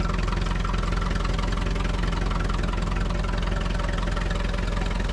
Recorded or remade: recorded